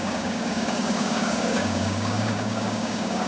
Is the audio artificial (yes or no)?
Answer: yes